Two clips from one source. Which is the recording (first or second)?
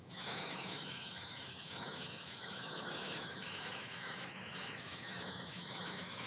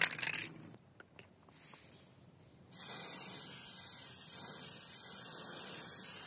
second